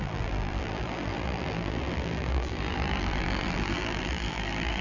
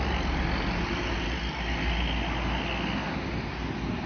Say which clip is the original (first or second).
second